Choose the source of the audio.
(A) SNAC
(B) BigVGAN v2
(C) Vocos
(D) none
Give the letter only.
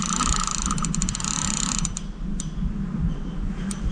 D